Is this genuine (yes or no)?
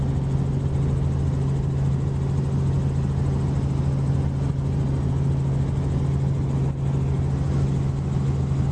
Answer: yes